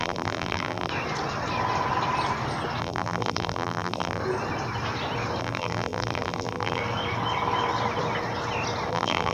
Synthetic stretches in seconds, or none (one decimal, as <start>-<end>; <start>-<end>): 0.0-0.9; 2.8-4.2; 5.4-6.8; 8.9-9.3